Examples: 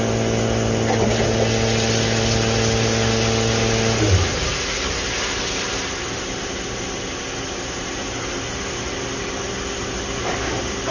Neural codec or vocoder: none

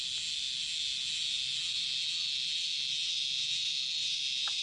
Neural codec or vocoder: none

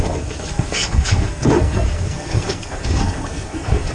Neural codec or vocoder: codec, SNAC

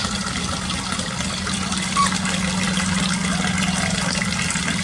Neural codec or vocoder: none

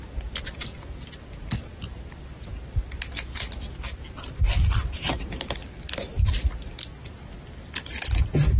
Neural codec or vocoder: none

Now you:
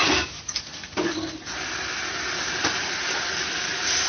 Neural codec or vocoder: none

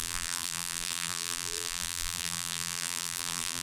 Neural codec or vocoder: vocoder, BigVGAN v2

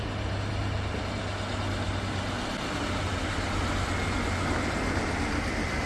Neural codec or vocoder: none